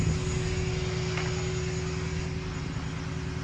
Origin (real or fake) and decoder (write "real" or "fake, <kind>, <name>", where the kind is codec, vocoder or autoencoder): real